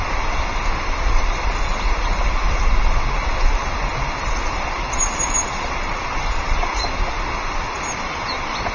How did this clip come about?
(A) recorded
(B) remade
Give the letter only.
A